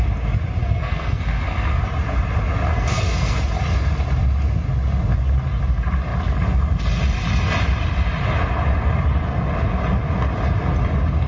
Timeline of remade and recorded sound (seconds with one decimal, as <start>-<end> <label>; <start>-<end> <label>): 0.0-0.6 recorded; 0.6-1.8 remade; 1.8-2.7 recorded; 2.7-3.4 remade; 3.4-11.3 recorded